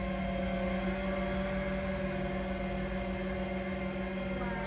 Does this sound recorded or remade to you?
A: recorded